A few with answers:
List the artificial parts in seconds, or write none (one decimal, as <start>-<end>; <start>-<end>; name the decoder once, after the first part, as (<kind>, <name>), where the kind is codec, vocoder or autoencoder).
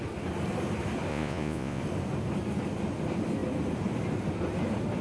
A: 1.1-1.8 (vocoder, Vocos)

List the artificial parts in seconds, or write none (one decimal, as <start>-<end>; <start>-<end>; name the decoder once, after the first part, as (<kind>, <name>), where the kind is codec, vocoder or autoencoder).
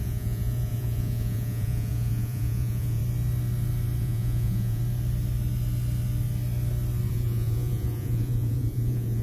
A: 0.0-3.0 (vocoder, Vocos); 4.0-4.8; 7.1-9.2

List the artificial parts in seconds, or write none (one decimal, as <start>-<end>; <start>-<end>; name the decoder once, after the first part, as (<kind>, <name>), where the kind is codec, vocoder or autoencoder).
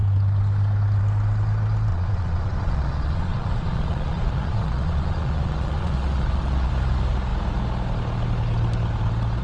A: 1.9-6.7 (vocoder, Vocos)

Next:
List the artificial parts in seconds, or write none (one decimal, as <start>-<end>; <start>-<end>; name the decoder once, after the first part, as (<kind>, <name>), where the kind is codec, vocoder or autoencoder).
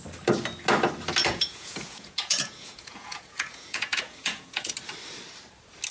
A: 1.2-4.7 (vocoder, Vocos)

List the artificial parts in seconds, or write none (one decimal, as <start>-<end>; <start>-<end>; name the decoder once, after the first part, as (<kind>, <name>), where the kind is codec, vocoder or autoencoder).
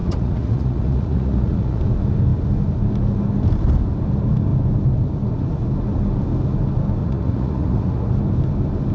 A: 0.0-1.8 (vocoder, Vocos); 7.0-8.1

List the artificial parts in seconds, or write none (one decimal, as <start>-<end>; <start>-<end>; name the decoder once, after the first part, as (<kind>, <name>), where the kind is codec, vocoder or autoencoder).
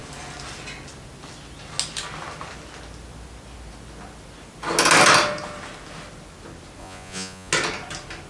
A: 6.8-7.5 (vocoder, Vocos)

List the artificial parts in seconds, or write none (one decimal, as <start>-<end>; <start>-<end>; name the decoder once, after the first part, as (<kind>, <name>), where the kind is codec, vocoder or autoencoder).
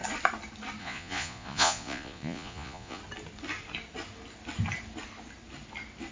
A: 0.8-3.0 (vocoder, Vocos)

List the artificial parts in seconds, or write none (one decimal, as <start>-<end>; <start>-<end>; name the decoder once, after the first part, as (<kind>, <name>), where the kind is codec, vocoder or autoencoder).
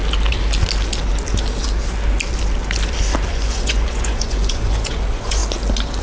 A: 3.3-5.4 (vocoder, Vocos)